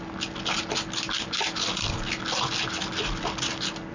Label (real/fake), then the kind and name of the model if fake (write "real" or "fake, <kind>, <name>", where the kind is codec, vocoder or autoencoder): real